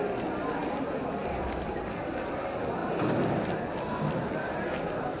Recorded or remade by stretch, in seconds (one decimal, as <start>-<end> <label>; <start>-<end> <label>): 0.0-5.2 recorded